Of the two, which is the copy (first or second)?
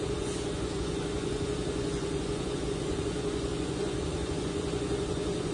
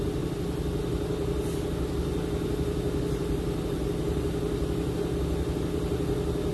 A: first